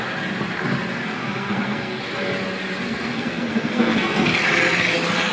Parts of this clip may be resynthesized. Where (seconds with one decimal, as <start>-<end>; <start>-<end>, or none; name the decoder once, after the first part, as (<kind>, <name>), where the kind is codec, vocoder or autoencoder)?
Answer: 1.2-2.0 (codec, SNAC); 2.9-4.3